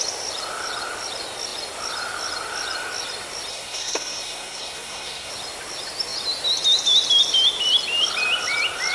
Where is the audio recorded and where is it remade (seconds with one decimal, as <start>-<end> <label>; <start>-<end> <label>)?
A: 0.0-3.5 recorded; 3.5-5.3 remade; 5.3-8.9 recorded